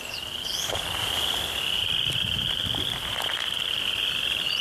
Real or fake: real